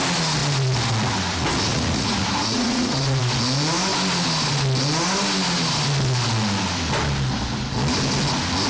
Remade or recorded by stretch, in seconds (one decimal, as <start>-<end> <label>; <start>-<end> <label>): 0.0-1.7 recorded; 1.7-3.2 remade; 3.2-8.7 recorded